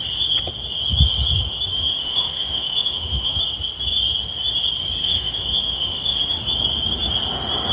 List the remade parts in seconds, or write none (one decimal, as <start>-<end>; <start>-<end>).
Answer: 1.7-3.4; 5.0-6.4